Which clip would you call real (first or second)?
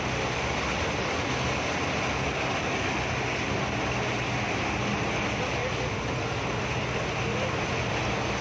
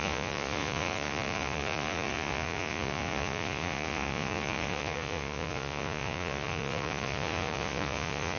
first